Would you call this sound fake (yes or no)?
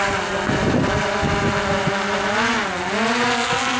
no